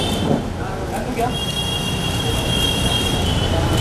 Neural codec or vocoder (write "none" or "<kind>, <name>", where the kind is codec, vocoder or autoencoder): none